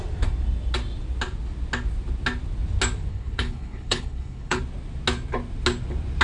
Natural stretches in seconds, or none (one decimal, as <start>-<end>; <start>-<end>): 0.0-3.1; 4.6-6.2